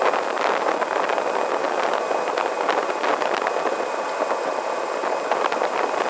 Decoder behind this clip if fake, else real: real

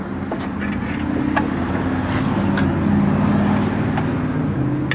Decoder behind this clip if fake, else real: real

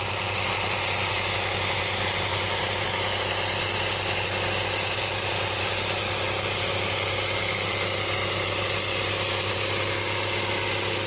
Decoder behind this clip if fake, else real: real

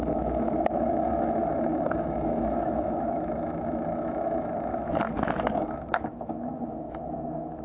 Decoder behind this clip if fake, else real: fake, autoencoder, DAC-VAE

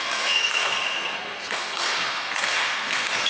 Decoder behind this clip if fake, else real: fake, codec, SNAC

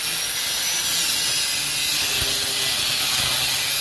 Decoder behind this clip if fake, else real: real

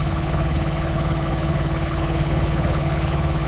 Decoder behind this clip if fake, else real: fake, codec, HILCodec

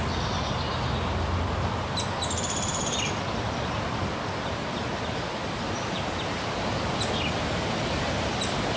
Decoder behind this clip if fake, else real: real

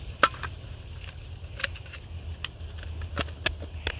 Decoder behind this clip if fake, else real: real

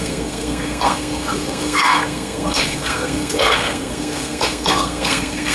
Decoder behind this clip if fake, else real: fake, codec, SNAC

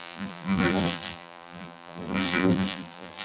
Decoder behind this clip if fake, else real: fake, vocoder, BigVGAN v2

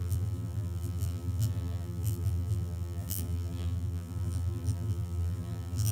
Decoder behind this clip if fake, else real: fake, vocoder, BigVGAN v2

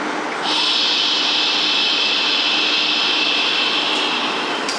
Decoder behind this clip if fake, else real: real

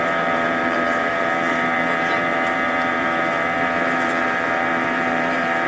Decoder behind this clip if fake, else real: fake, vocoder, BigVGAN v2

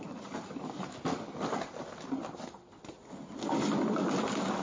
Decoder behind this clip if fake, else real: real